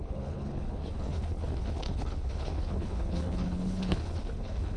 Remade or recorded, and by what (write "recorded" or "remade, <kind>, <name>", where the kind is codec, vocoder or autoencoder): remade, codec, HILCodec